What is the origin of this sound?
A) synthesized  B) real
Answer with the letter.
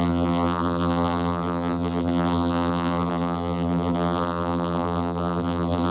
A